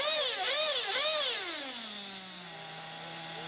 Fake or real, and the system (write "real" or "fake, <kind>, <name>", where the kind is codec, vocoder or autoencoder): real